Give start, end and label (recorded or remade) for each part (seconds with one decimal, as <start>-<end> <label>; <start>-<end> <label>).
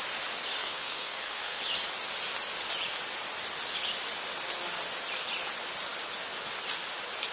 0.0-0.6 recorded; 0.6-1.6 remade; 1.6-7.3 recorded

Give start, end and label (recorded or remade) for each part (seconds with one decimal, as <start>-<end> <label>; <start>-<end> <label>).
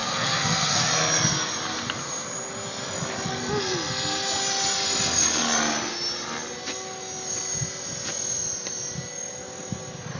0.0-0.9 remade; 0.9-10.2 recorded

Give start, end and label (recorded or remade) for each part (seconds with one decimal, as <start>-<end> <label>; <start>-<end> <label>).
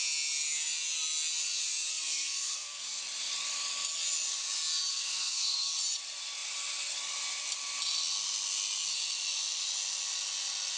0.0-1.9 recorded; 1.9-3.0 remade; 3.0-4.9 recorded; 4.9-5.7 remade; 5.7-10.8 recorded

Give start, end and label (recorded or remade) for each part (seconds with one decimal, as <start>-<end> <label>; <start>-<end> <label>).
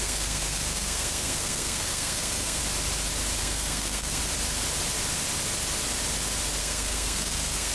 0.0-2.6 remade; 2.6-3.4 recorded; 3.4-4.2 remade; 4.2-6.6 recorded; 6.6-7.7 remade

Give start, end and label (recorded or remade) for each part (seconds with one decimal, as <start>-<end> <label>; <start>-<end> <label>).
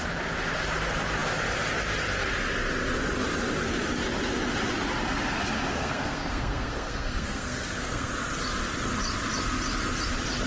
0.0-5.7 recorded; 5.7-8.1 remade; 8.1-10.5 recorded